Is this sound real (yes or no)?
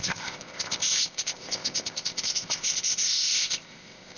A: no